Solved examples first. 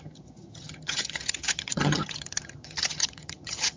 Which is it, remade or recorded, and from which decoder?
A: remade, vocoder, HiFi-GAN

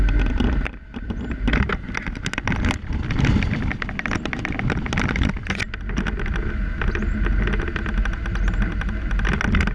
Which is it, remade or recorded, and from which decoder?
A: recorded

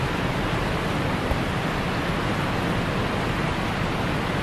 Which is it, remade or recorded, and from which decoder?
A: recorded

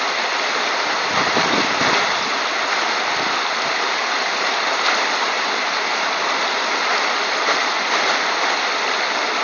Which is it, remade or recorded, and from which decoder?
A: recorded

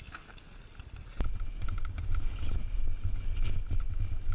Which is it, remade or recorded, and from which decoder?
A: recorded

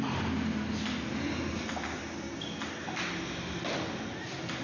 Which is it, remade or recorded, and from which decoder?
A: recorded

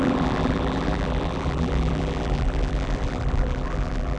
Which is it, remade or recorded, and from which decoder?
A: remade, vocoder, BigVGAN v2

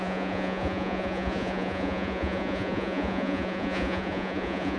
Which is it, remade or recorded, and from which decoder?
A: remade, vocoder, Vocos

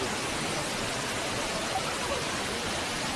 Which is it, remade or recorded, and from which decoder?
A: recorded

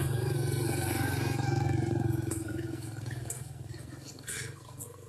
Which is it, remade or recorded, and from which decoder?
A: remade, codec, SNAC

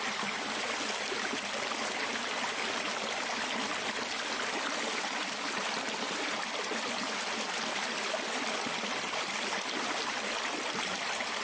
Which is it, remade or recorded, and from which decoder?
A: recorded